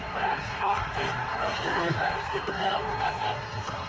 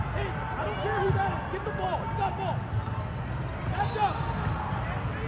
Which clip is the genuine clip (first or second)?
second